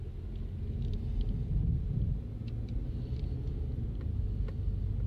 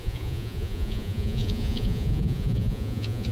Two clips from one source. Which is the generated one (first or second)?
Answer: second